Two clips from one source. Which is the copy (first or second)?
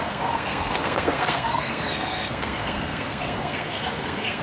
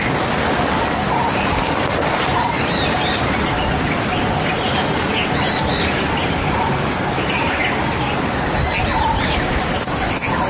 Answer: first